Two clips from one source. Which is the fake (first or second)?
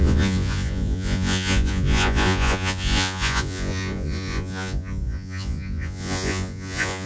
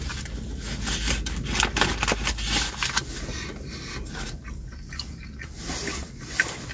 first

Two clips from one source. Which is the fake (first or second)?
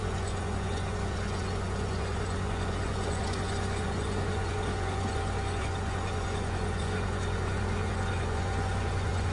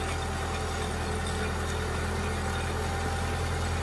first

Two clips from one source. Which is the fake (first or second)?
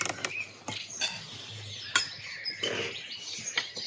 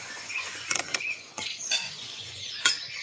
second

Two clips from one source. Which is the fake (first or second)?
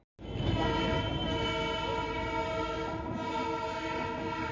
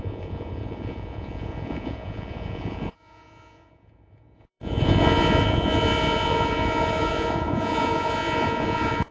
second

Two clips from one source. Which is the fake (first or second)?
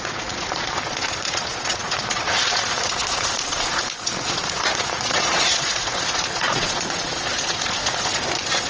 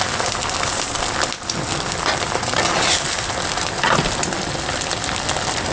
first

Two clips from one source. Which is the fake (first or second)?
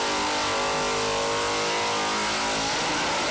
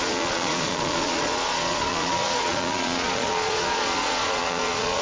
second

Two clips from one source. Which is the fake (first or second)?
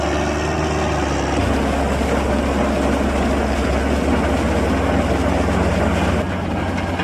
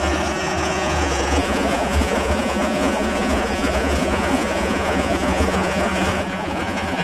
second